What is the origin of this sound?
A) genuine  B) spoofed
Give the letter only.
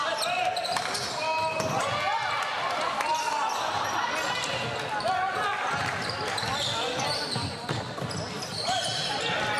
A